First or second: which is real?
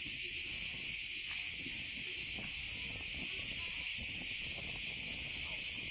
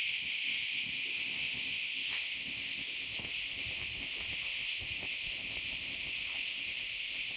first